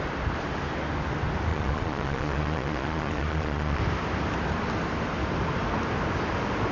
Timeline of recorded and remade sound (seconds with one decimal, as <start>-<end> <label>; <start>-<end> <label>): 0.0-1.5 recorded; 1.5-3.8 remade; 3.8-6.7 recorded